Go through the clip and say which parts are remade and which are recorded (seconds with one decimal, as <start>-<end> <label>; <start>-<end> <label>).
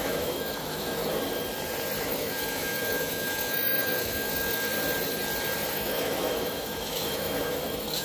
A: 0.0-1.0 remade; 1.0-2.0 recorded; 2.0-4.7 remade; 4.7-5.7 recorded; 5.7-8.0 remade